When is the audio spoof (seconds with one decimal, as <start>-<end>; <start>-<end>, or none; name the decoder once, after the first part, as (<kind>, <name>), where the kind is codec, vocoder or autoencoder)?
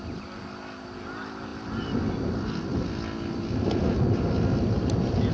none